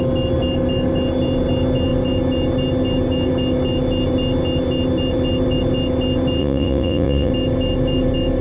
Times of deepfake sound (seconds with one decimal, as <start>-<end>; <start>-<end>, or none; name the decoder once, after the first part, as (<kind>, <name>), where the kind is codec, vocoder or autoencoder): 6.4-7.3 (vocoder, Vocos)